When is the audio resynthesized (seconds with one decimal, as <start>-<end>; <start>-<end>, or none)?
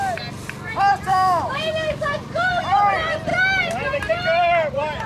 1.1-2.5